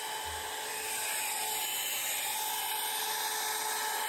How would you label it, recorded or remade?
recorded